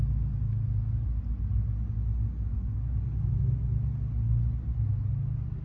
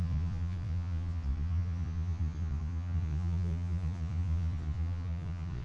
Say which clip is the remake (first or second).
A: second